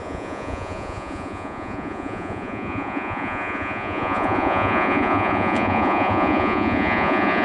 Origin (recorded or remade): remade